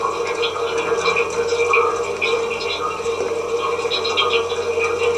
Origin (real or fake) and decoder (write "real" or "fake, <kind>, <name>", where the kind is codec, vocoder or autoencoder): real